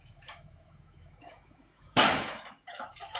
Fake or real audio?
fake